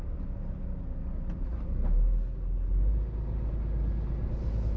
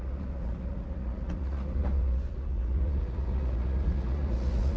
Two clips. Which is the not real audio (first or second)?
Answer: second